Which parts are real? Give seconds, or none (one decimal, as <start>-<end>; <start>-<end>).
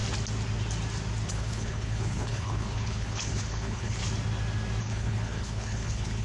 0.0-1.3; 4.0-4.8